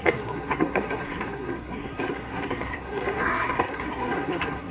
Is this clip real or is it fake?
fake